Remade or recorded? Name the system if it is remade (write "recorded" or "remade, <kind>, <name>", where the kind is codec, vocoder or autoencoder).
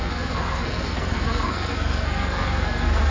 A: remade, codec, SNAC